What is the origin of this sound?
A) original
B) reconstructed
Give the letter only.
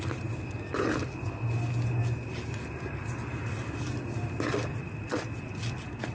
A